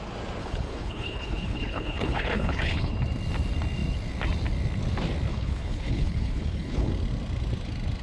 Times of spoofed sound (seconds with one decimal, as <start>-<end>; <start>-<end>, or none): 0.4-2.9; 5.3-6.9